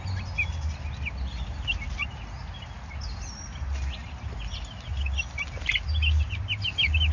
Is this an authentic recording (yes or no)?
yes